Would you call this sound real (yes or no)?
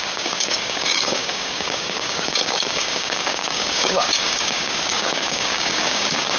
no